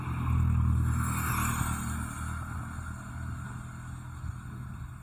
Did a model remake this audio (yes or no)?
no